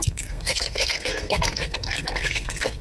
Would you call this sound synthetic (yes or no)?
yes